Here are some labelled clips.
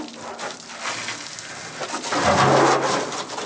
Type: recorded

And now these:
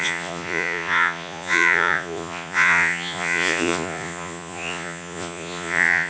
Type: remade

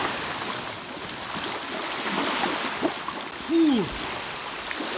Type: recorded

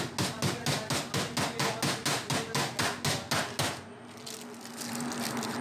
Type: recorded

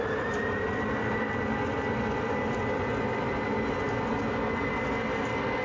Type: recorded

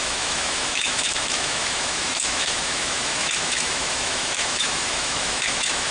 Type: remade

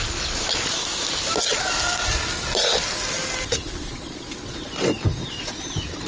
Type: recorded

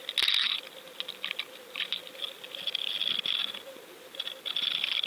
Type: recorded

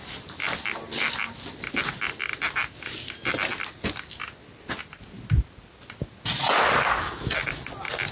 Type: recorded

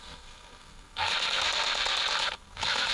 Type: remade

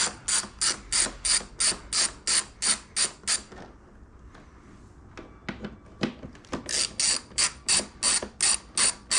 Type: recorded